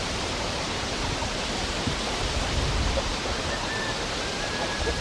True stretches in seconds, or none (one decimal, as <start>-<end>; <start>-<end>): 0.0-5.0